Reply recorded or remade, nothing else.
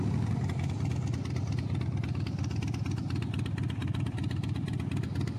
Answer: recorded